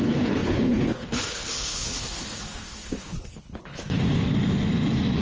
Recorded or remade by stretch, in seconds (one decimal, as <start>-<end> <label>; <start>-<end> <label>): 0.0-4.0 remade; 4.0-5.2 recorded